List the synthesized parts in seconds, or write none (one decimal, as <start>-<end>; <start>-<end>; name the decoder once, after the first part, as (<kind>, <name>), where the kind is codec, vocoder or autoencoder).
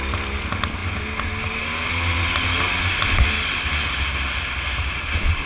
none